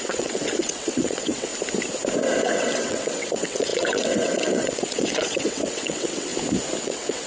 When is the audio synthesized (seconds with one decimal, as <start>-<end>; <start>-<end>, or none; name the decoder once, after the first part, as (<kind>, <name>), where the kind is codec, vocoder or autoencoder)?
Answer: 0.0-1.5 (vocoder, WaveNeXt); 2.4-6.3; 6.8-7.3